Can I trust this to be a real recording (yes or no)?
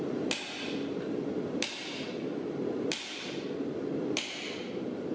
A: yes